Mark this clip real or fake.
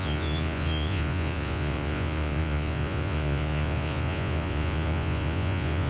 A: fake